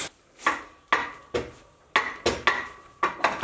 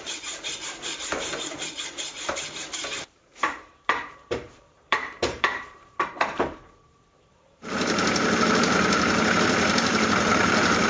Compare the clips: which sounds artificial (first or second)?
second